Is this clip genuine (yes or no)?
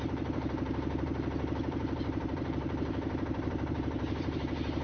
no